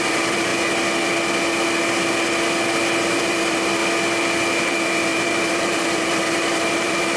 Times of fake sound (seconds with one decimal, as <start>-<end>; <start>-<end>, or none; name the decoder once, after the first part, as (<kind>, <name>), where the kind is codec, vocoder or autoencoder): 0.0-0.5 (vocoder, BigVGAN v2); 3.2-3.8; 4.6-7.2